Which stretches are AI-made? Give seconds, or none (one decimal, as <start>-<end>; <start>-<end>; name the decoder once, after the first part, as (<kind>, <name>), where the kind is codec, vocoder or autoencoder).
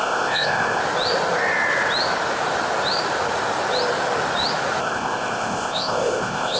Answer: 0.0-0.8 (codec, ZipCodec); 4.8-6.6